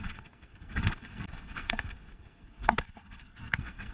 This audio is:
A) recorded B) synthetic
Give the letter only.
B